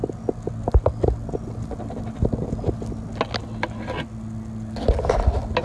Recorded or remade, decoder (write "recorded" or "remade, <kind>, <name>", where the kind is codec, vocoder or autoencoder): recorded